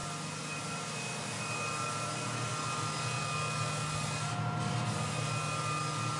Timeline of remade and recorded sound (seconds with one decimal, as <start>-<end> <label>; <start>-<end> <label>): 0.0-6.2 recorded